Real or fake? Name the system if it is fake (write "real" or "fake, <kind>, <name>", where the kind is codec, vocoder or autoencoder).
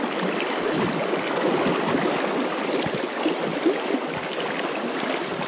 real